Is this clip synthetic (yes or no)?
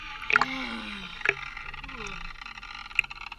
no